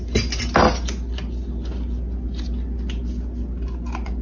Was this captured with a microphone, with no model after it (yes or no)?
yes